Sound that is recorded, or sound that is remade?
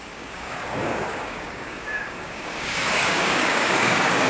remade